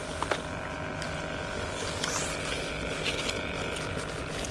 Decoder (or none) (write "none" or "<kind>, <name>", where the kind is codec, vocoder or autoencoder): none